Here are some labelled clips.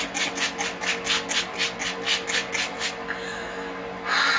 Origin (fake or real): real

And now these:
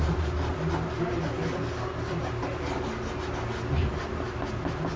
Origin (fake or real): real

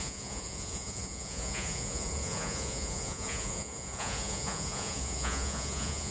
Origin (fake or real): fake